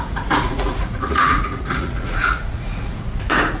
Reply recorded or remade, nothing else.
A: remade